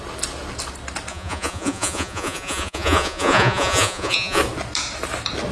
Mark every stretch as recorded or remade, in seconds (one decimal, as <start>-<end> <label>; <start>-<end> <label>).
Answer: 0.0-1.1 recorded; 1.1-4.4 remade; 4.4-5.5 recorded